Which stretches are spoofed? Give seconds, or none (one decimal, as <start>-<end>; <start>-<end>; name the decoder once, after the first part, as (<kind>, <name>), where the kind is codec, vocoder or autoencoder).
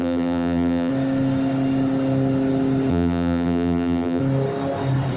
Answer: 0.0-0.9 (vocoder, BigVGAN v2); 2.9-4.2